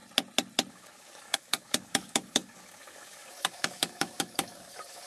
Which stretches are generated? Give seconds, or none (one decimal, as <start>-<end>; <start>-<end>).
0.7-5.1